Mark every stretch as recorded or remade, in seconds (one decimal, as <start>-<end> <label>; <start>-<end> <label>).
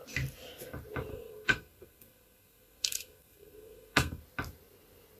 0.0-1.1 recorded; 1.1-4.2 remade; 4.2-5.2 recorded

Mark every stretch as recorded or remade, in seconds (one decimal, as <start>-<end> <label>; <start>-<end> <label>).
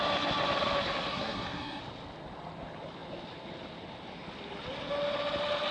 0.0-1.1 recorded; 1.1-1.8 remade; 1.8-5.7 recorded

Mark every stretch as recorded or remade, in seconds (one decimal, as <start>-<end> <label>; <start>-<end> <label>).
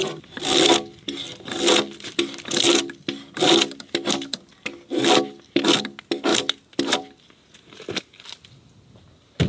0.0-9.5 recorded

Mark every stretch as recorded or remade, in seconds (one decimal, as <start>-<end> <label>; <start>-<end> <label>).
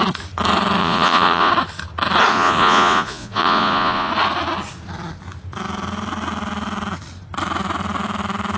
0.0-0.8 recorded; 0.8-1.5 remade; 1.5-2.3 recorded; 2.3-4.1 remade; 4.1-8.6 recorded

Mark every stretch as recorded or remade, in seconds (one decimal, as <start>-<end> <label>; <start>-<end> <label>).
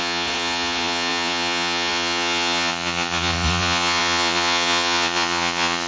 0.0-5.9 remade